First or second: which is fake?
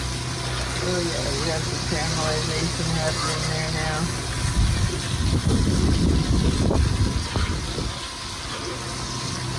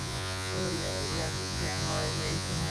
second